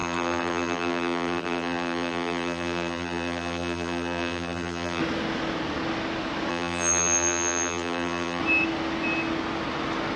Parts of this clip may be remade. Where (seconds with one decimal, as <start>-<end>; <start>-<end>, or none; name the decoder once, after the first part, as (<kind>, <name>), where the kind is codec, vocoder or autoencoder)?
0.0-5.0 (vocoder, BigVGAN v2); 6.5-8.4